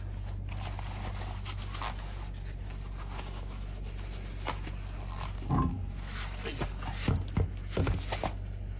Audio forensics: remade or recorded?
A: recorded